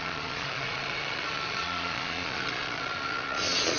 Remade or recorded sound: remade